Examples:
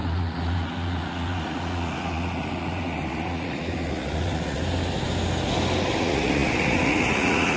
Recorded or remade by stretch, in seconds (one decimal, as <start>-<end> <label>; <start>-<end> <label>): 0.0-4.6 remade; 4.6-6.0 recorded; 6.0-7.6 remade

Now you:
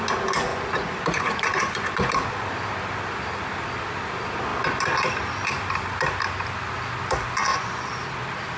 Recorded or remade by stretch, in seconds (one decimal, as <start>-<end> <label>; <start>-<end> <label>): 0.0-0.5 recorded; 0.5-2.1 remade; 2.1-7.5 recorded; 7.5-8.0 remade; 8.0-8.6 recorded

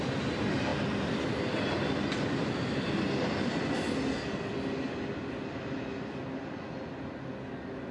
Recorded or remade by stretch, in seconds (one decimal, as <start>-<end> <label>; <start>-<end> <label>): 0.0-7.9 recorded